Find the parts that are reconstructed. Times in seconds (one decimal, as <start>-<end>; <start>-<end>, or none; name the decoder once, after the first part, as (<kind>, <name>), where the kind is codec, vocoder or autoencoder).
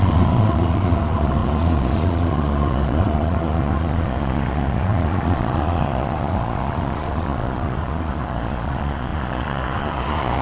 0.0-10.4 (vocoder, Vocos)